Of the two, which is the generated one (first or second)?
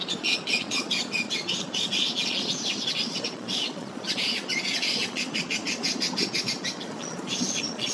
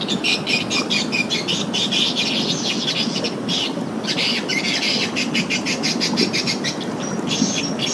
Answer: first